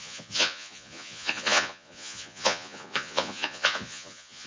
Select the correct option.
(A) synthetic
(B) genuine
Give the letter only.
A